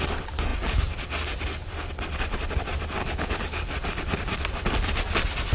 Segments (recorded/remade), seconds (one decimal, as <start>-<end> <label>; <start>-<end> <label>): 0.0-3.0 recorded; 3.0-3.7 remade; 3.7-5.5 recorded